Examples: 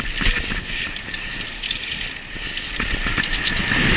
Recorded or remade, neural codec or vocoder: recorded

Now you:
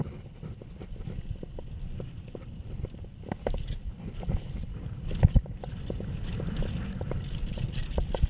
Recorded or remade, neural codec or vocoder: recorded